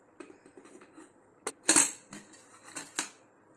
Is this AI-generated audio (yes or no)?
no